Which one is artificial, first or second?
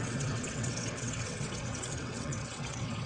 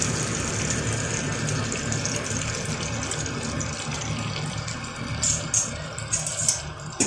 first